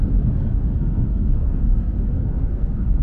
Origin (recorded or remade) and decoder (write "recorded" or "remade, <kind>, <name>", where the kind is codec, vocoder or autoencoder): remade, codec, SNAC